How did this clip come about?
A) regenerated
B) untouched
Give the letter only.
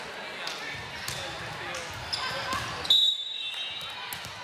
B